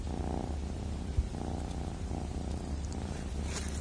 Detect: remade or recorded remade